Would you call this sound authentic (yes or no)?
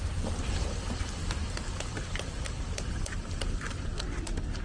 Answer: yes